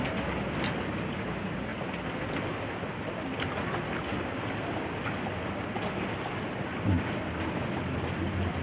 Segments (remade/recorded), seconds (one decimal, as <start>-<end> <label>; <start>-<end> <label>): 0.0-8.6 recorded